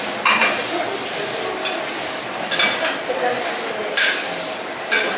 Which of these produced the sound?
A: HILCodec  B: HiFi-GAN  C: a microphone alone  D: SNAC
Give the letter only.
C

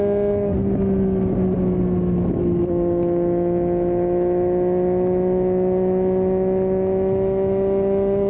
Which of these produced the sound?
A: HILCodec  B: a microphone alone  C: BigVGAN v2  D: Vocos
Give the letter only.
B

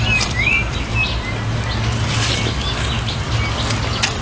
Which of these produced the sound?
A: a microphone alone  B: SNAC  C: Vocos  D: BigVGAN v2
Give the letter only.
A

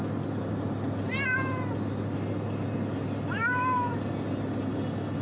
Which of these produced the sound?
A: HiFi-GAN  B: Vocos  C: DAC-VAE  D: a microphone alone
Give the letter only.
D